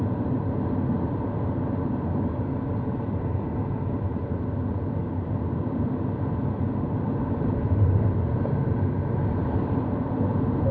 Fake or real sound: real